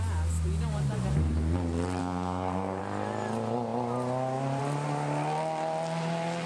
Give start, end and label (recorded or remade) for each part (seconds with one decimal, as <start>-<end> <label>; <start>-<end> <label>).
0.0-2.0 recorded; 2.0-2.8 remade; 2.8-6.5 recorded